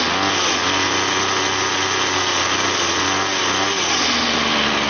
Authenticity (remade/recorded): recorded